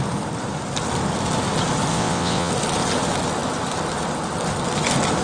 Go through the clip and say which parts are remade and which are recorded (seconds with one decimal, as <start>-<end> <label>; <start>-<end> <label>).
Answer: 0.0-1.9 recorded; 1.9-2.5 remade; 2.5-5.2 recorded